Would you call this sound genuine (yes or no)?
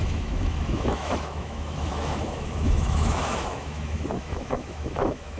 no